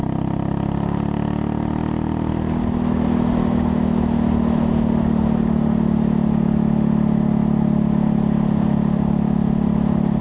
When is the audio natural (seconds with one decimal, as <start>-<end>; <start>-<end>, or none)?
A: 0.0-10.2